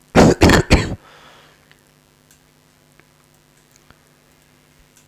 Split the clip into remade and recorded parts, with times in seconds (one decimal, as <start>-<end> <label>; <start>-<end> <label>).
0.0-5.1 recorded